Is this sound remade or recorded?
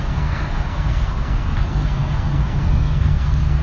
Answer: remade